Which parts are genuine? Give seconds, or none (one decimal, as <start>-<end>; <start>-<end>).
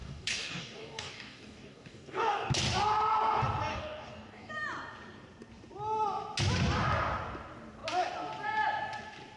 2.5-3.7; 4.5-9.4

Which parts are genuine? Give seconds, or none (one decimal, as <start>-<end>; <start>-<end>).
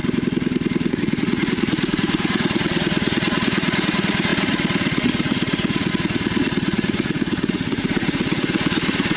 0.0-0.9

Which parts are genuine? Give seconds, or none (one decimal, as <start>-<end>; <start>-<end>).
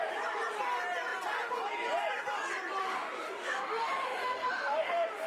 0.0-2.8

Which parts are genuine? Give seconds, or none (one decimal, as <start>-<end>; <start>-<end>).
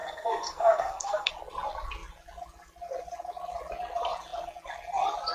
1.3-5.3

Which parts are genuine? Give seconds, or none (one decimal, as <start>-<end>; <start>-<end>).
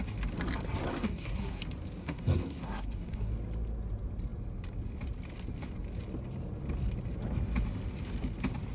0.0-0.9; 1.6-2.0; 3.3-8.7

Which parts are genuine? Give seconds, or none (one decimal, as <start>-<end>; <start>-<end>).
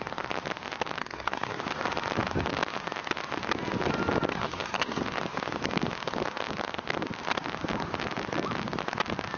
0.0-1.0; 1.6-4.3; 5.0-9.4